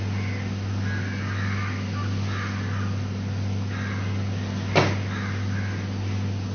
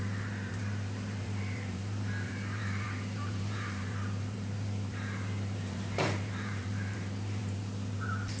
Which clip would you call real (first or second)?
first